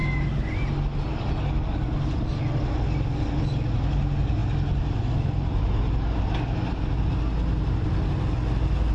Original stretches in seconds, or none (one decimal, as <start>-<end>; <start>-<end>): 0.0-8.9